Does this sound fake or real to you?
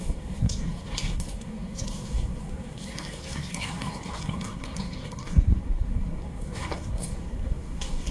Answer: fake